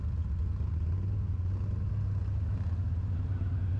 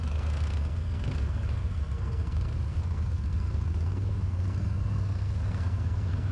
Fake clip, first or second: second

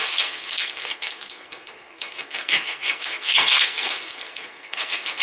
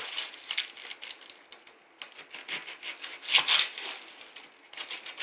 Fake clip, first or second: first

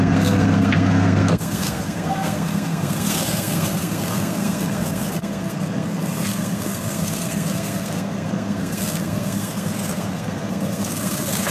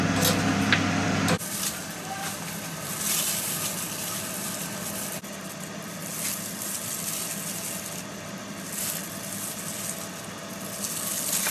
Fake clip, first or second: first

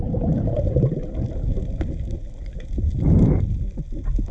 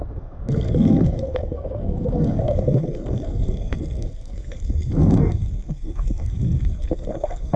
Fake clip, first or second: second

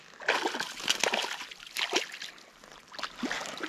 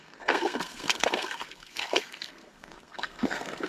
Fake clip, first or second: second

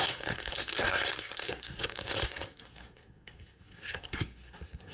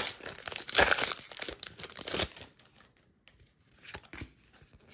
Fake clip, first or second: first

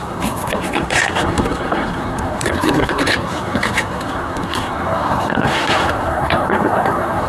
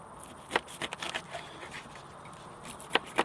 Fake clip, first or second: first